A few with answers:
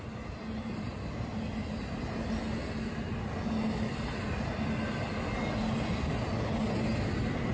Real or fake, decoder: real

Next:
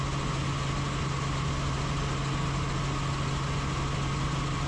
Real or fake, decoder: real